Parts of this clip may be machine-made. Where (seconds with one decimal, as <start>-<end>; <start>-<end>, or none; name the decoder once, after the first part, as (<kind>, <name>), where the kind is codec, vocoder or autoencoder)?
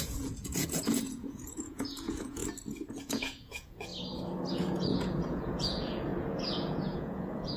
0.0-2.4 (vocoder, Vocos); 2.9-3.9; 4.5-7.6